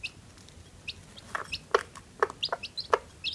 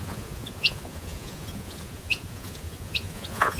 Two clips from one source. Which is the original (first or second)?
first